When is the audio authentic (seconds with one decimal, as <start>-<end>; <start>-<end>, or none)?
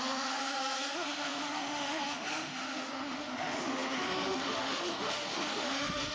none